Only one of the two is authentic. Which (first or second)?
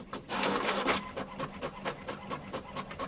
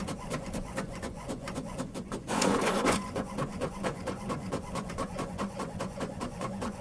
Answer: first